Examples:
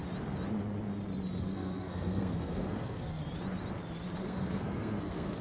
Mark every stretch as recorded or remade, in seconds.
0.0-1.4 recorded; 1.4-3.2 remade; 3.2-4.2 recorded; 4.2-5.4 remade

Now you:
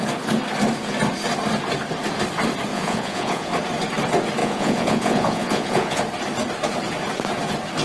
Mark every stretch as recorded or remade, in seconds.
0.0-2.7 recorded; 2.7-3.5 remade; 3.5-4.4 recorded; 4.4-6.0 remade; 6.0-7.8 recorded

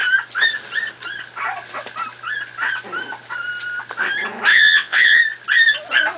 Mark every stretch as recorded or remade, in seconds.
0.0-4.5 recorded; 4.5-5.2 remade; 5.2-6.2 recorded

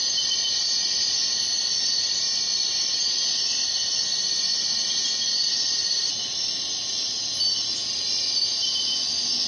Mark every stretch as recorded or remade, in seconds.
0.0-9.5 recorded

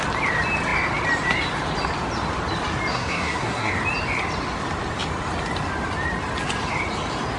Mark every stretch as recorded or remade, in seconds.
0.0-2.9 recorded; 2.9-3.7 remade; 3.7-7.4 recorded

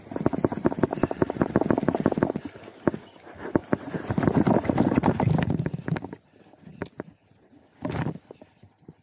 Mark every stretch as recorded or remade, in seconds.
0.0-0.6 recorded; 0.6-1.5 remade; 1.5-3.6 recorded; 3.6-4.3 remade; 4.3-9.0 recorded